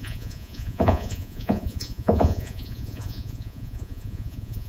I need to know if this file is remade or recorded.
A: remade